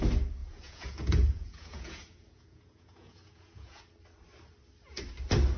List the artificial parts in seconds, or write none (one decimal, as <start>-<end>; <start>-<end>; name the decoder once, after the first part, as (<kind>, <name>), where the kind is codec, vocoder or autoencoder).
0.4-3.8 (vocoder, Vocos)